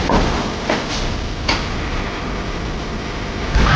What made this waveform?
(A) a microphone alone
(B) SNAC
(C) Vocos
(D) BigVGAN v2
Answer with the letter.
A